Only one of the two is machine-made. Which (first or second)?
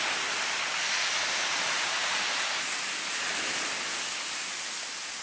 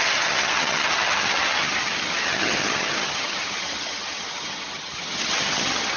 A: second